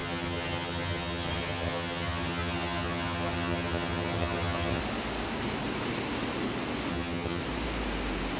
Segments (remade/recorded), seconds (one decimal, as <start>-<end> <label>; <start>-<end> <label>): 0.0-4.8 remade; 4.8-6.9 recorded; 6.9-7.4 remade; 7.4-8.4 recorded